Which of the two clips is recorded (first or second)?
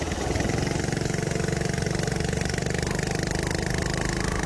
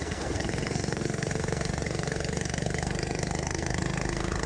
first